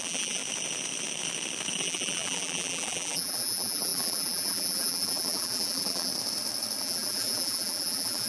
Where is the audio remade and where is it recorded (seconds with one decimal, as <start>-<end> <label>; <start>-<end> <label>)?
0.0-0.4 remade; 0.4-1.8 recorded; 1.8-6.1 remade; 6.1-6.8 recorded; 6.8-8.3 remade